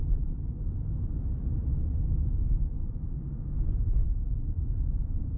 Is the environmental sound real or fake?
fake